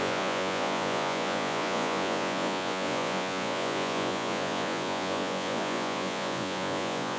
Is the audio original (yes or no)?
no